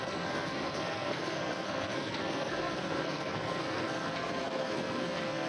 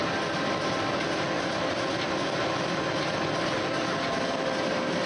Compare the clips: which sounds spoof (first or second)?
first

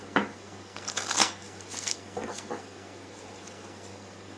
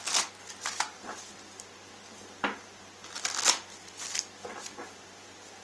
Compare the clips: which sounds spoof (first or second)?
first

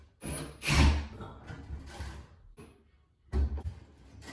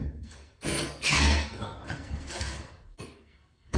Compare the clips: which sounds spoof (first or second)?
second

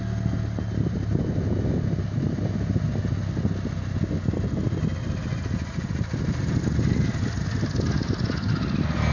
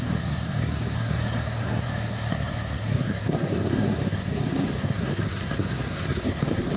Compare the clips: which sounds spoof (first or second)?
second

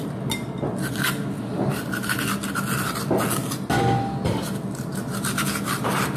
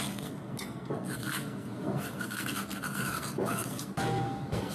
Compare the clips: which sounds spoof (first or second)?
second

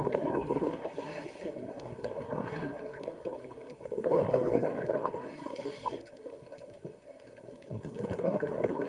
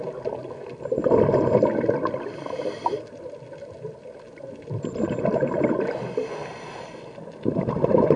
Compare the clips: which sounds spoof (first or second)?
first